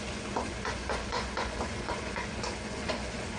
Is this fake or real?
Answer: fake